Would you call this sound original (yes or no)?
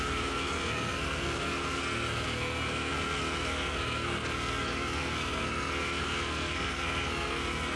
no